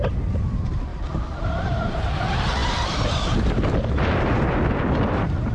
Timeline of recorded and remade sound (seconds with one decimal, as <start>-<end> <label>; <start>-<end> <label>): 0.0-0.9 recorded; 0.9-2.2 remade; 2.2-5.5 recorded